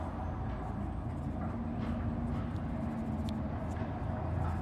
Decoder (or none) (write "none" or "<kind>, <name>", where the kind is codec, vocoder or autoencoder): none